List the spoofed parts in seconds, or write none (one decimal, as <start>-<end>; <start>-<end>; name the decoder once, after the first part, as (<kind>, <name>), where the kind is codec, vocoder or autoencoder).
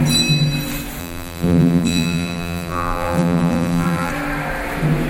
1.0-4.1 (vocoder, BigVGAN v2)